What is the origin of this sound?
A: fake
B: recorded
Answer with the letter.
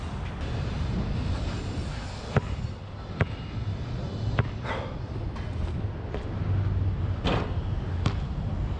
B